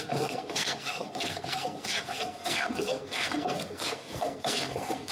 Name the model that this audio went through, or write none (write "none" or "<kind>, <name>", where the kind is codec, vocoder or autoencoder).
codec, SNAC